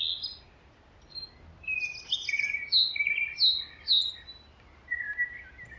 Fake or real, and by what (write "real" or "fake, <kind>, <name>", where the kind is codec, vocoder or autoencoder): real